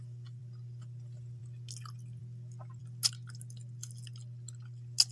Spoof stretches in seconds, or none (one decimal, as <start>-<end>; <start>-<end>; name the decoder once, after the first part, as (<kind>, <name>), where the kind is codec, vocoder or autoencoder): none